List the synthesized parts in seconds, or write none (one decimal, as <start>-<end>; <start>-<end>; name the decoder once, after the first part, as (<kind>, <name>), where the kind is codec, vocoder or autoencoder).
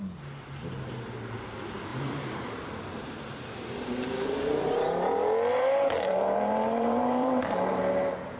1.9-5.1 (vocoder, BigVGAN v2); 5.5-7.8